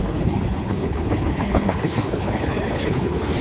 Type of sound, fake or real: fake